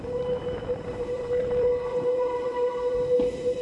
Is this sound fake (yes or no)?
yes